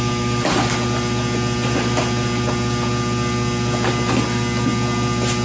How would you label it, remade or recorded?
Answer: recorded